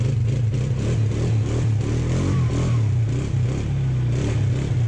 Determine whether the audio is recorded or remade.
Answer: recorded